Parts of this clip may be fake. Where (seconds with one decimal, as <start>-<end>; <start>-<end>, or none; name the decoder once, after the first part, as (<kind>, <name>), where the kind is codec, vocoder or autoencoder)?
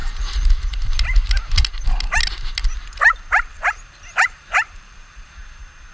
0.0-0.5 (vocoder, BigVGAN v2); 3.5-5.3